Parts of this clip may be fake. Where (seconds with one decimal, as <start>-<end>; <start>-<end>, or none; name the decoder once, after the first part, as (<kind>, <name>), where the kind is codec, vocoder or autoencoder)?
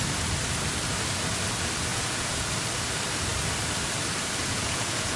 1.9-2.5 (vocoder, Vocos); 4.4-5.2